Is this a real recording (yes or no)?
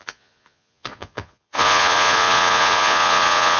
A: no